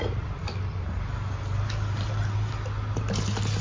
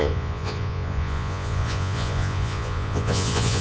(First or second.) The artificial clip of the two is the second